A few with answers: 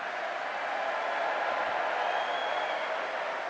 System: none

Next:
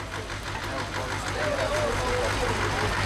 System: none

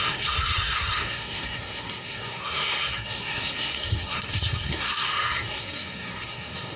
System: codec, SNAC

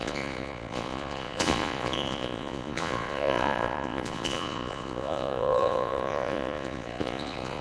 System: vocoder, Vocos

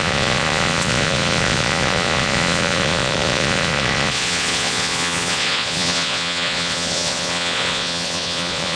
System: vocoder, Vocos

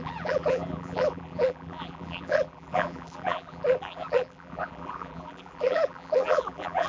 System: vocoder, BigVGAN v2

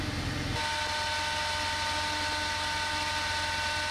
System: none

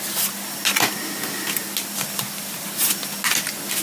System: none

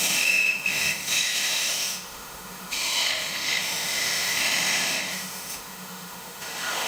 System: autoencoder, DAC-VAE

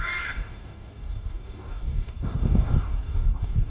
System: codec, DAC